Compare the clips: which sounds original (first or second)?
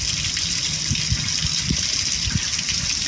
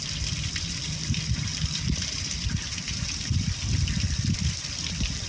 first